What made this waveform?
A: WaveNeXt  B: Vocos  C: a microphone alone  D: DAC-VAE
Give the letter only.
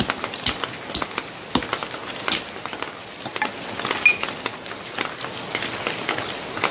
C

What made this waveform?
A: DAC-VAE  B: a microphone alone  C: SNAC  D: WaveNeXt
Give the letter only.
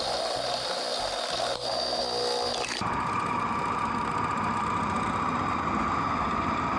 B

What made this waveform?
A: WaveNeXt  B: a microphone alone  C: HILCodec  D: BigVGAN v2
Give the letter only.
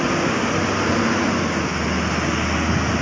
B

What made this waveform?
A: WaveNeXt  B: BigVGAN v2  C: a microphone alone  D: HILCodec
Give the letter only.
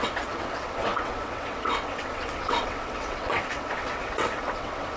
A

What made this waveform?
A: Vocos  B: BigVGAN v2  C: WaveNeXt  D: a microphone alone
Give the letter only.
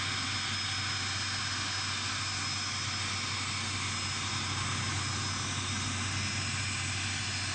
D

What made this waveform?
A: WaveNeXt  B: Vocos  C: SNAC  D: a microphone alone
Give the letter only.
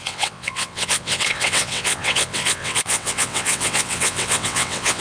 A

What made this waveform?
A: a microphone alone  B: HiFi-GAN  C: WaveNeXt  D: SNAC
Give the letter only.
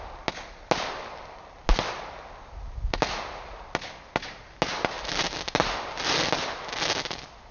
A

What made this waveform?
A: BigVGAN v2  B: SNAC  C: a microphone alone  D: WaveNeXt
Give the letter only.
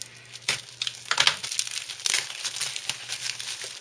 C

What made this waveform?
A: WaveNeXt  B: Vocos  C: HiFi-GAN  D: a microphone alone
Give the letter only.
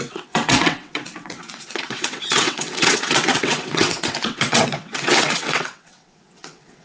A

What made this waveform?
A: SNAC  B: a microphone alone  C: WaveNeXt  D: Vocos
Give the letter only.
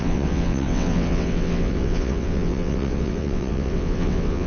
C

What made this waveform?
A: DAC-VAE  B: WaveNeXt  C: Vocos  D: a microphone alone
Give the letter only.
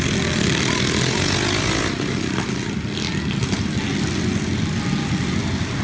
D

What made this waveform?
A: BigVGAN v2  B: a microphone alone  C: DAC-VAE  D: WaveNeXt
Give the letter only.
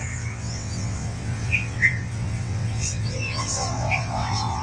D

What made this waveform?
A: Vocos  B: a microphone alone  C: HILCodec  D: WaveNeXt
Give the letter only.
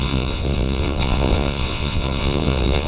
D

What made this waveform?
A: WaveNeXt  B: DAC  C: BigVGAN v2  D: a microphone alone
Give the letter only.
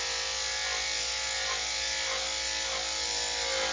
D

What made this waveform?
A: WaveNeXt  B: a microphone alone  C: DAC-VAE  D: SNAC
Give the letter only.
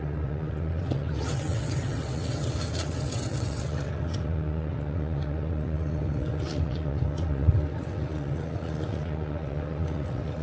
A